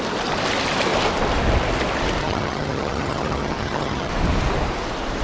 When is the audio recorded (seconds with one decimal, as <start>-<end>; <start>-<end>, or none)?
0.0-2.2; 4.1-5.2